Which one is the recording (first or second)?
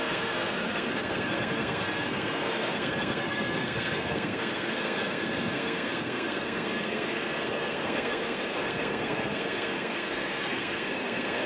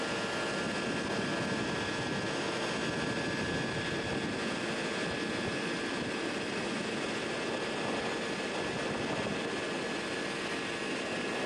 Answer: second